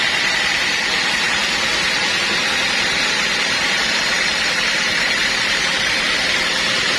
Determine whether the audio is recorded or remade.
remade